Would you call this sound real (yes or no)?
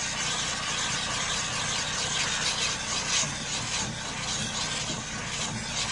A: yes